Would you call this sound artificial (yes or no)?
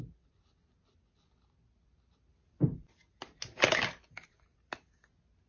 no